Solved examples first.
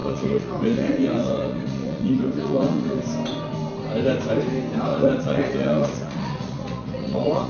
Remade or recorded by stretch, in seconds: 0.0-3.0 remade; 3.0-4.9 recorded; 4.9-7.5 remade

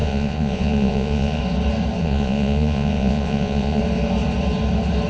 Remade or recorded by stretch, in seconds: 0.0-1.4 remade; 1.4-2.0 recorded; 2.0-3.8 remade; 3.8-5.1 recorded

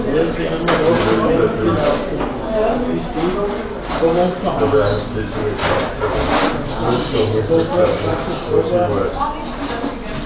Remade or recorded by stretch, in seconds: 0.0-10.3 recorded

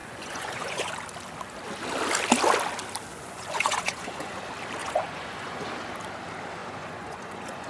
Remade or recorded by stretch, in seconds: 0.0-0.9 remade; 0.9-3.1 recorded; 3.1-4.3 remade; 4.3-4.8 recorded; 4.8-5.7 remade; 5.7-6.6 recorded; 6.6-7.7 remade

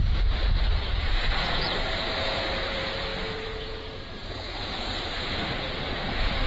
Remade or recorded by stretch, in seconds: 0.0-6.5 remade

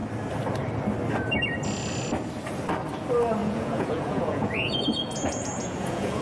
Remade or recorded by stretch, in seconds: 0.0-3.4 recorded; 3.4-6.2 remade

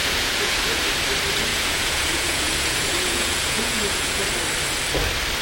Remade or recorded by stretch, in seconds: 0.0-0.8 remade; 0.8-1.5 recorded; 1.5-4.2 remade; 4.2-5.4 recorded